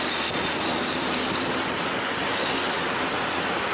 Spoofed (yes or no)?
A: no